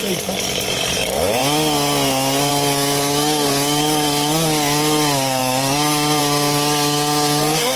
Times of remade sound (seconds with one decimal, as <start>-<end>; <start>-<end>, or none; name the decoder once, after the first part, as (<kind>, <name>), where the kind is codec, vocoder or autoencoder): 0.0-1.4 (codec, DAC); 2.5-7.8

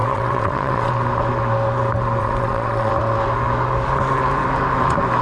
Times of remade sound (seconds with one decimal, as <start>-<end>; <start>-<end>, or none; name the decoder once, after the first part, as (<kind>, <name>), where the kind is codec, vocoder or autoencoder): 0.0-0.9 (vocoder, WaveNeXt); 2.2-2.9

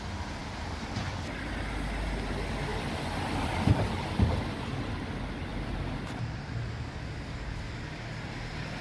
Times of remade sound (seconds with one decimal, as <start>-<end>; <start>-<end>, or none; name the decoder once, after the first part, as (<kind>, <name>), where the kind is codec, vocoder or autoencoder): none